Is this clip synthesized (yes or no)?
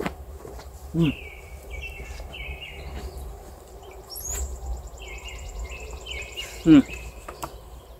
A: yes